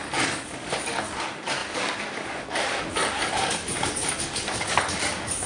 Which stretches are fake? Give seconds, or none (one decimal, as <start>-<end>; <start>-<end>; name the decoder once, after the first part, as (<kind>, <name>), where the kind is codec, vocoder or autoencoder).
0.0-5.5 (codec, DAC)